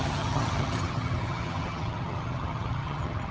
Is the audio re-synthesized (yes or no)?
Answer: yes